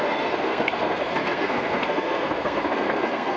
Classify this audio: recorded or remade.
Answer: remade